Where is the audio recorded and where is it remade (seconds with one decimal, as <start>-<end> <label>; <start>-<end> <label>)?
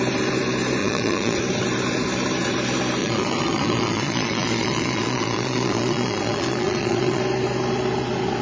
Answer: 0.0-0.8 recorded; 0.8-1.4 remade; 1.4-3.0 recorded; 3.0-7.2 remade; 7.2-8.4 recorded